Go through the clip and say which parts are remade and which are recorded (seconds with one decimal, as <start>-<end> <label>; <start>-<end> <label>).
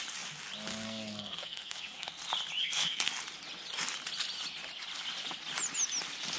0.0-0.7 recorded; 0.7-2.2 remade; 2.2-2.6 recorded; 2.6-3.1 remade; 3.1-6.4 recorded